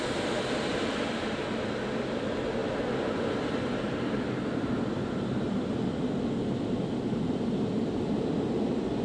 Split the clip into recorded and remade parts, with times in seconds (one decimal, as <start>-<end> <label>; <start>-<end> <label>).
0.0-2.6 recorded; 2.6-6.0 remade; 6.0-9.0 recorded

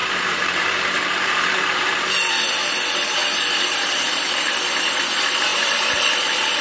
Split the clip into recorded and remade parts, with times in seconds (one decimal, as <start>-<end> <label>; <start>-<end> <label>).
0.0-2.3 remade; 2.3-6.6 recorded

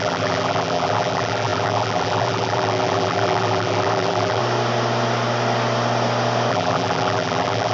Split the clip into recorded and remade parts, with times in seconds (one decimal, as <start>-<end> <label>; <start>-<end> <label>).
0.0-4.4 remade; 4.4-6.5 recorded; 6.5-7.7 remade

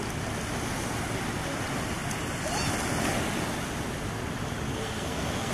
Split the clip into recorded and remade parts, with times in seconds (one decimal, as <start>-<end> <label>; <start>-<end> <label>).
0.0-4.7 recorded; 4.7-5.5 remade

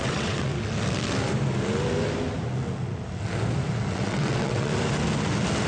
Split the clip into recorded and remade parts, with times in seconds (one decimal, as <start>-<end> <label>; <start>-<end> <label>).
0.0-0.5 remade; 0.5-3.9 recorded; 3.9-4.7 remade; 4.7-5.7 recorded

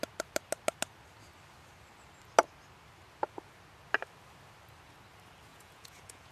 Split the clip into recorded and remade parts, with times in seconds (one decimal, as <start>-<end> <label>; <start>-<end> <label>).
0.0-5.5 recorded; 5.5-6.3 remade

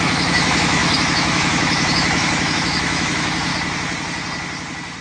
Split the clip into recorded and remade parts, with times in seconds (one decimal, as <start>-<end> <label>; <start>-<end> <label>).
0.0-3.5 remade; 3.5-5.0 recorded

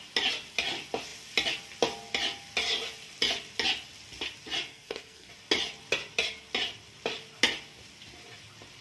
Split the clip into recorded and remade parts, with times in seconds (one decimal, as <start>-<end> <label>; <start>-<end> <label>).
0.0-4.7 recorded; 4.7-5.3 remade; 5.3-8.8 recorded